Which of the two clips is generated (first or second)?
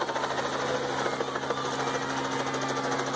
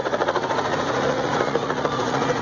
second